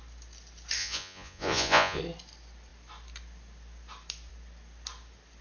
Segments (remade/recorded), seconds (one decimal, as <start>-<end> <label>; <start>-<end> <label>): 0.0-0.8 recorded; 0.8-2.0 remade; 2.0-5.4 recorded